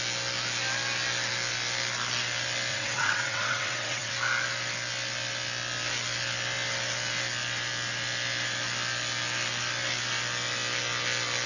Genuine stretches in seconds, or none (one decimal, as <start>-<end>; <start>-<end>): 0.0-2.7; 4.1-11.5